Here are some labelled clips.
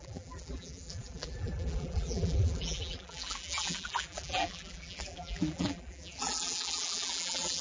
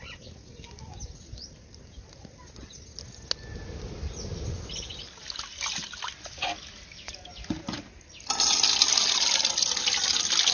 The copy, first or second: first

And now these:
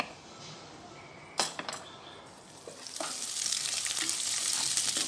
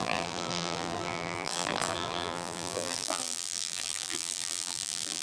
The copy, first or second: second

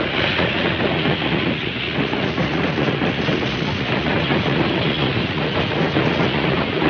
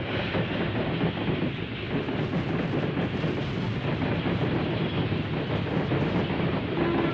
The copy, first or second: first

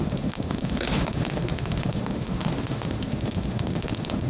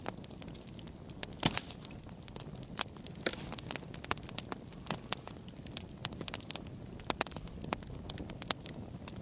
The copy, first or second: first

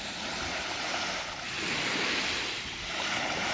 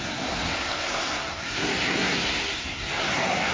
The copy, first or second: second